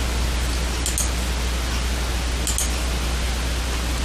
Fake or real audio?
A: real